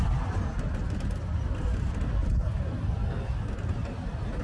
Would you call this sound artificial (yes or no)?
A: no